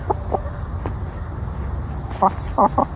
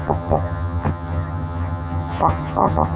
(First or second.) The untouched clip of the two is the first